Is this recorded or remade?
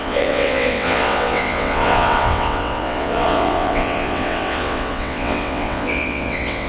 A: remade